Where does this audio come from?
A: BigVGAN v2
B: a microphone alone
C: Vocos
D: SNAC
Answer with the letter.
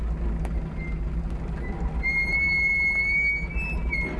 B